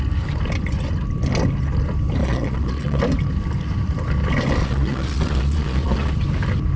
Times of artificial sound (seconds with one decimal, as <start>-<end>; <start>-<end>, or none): 2.2-3.0; 4.6-6.1